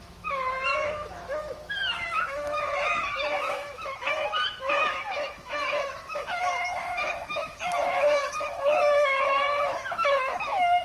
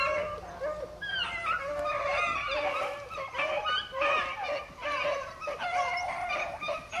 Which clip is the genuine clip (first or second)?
second